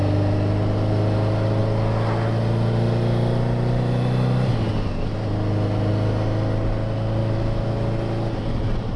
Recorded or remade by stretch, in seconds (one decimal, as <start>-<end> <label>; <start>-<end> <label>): 0.0-7.2 recorded; 7.2-7.7 remade; 7.7-9.0 recorded